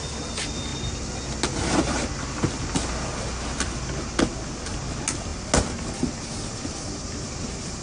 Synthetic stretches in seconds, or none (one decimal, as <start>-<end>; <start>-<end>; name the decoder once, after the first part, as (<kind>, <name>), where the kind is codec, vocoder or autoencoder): none